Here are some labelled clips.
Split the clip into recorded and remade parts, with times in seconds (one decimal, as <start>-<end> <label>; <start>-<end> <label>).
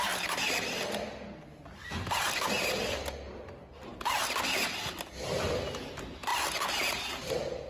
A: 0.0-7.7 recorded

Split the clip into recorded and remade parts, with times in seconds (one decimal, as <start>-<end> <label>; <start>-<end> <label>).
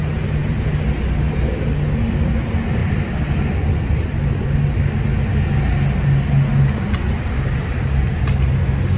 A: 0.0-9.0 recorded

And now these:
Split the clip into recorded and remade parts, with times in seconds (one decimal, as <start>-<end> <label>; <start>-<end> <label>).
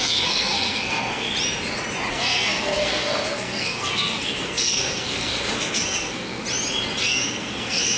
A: 0.0-1.3 remade; 1.3-2.1 recorded; 2.1-6.4 remade; 6.4-7.0 recorded; 7.0-8.0 remade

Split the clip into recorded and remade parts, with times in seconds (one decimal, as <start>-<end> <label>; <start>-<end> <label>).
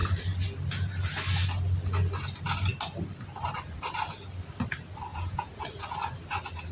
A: 0.0-5.1 recorded; 5.1-5.6 remade; 5.6-6.7 recorded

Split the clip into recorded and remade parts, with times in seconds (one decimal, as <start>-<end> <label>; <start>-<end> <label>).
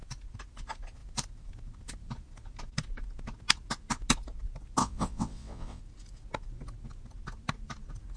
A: 0.0-4.8 recorded; 4.8-5.8 remade; 5.8-8.2 recorded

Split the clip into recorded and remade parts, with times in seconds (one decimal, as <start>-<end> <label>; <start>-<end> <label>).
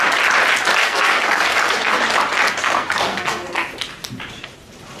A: 0.0-0.8 recorded; 0.8-2.0 remade; 2.0-2.6 recorded; 2.6-3.7 remade; 3.7-5.0 recorded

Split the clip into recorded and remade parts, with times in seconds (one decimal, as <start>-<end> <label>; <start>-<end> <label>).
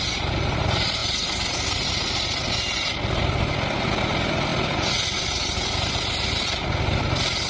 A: 0.0-7.5 recorded